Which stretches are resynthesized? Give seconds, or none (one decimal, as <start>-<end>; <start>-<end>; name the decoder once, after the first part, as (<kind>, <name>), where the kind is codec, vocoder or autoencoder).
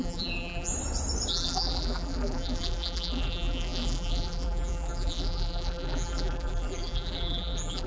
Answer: 0.0-0.7 (vocoder, BigVGAN v2); 1.3-7.9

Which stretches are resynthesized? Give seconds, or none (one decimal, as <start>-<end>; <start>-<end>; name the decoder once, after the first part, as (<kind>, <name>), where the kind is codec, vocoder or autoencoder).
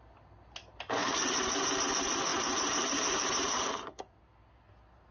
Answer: 1.0-1.8 (vocoder, BigVGAN v2); 2.3-4.0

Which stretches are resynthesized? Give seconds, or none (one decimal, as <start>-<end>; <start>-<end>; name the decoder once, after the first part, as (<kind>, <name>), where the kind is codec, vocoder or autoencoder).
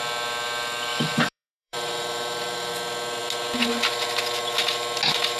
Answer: 0.9-2.7 (vocoder, BigVGAN v2)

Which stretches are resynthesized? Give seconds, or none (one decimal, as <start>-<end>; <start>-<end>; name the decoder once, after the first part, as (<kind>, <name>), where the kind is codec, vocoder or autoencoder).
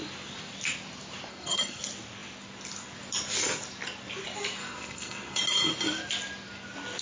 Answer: 1.3-1.8 (codec, SNAC); 4.6-5.4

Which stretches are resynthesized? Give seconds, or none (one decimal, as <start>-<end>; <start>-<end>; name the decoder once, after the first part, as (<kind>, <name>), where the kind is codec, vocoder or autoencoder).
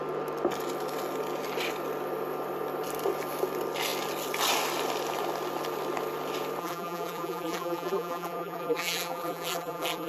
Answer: 6.6-10.1 (vocoder, BigVGAN v2)